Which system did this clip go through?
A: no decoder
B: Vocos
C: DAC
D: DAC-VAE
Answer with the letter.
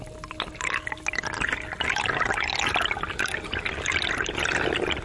A